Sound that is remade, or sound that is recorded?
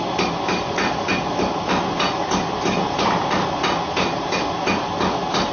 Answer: recorded